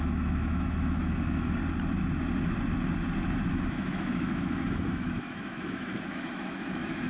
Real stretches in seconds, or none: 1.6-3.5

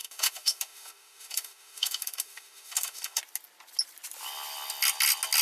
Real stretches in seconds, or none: 3.2-5.4

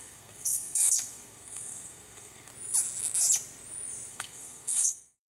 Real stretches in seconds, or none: 2.5-4.1

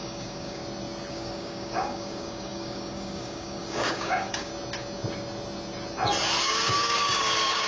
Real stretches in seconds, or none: 0.6-1.1; 4.5-6.4

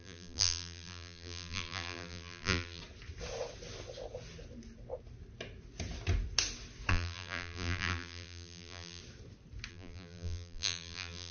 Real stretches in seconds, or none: 2.8-6.9; 9.0-9.7

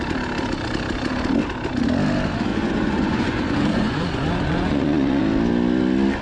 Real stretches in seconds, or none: 0.0-2.5; 5.2-6.2

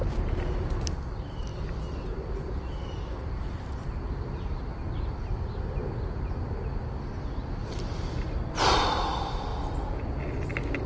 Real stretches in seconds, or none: 0.0-7.6; 8.4-10.9